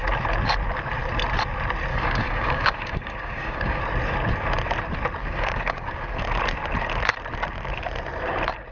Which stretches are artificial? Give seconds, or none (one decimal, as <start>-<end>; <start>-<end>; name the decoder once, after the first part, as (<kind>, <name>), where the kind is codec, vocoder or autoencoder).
1.9-3.8 (codec, DAC); 5.2-6.2